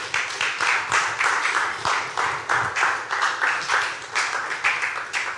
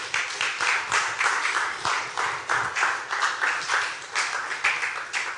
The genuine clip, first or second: first